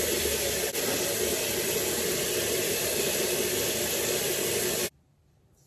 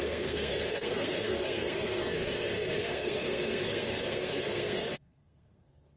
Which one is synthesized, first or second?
second